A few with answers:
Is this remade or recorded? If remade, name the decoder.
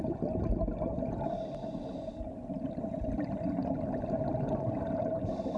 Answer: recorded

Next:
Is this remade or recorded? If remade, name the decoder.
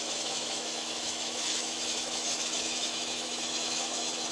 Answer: remade, autoencoder, DAC-VAE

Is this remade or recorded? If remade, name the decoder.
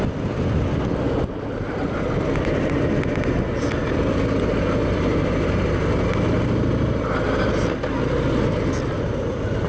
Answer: recorded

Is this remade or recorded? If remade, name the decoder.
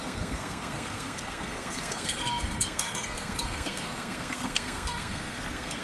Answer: remade, codec, SNAC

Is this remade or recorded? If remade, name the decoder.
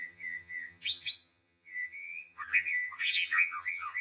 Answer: remade, vocoder, HiFi-GAN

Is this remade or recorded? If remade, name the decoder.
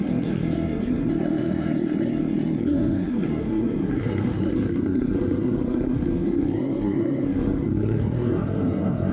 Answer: remade, codec, SNAC